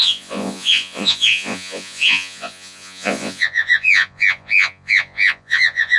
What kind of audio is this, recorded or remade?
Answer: remade